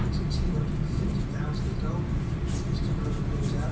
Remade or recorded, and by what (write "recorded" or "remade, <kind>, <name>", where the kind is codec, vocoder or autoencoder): recorded